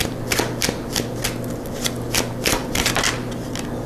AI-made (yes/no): no